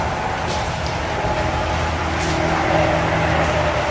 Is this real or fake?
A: real